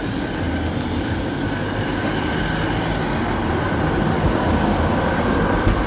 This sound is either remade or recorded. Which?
recorded